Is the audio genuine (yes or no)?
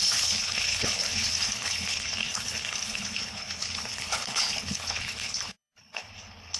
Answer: no